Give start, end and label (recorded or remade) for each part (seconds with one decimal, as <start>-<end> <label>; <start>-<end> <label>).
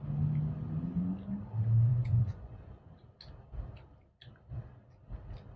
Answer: 0.0-1.9 recorded; 1.9-2.7 remade; 2.7-5.6 recorded